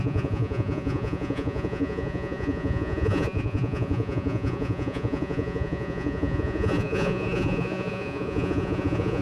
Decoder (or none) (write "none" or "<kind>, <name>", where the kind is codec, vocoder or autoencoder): vocoder, Vocos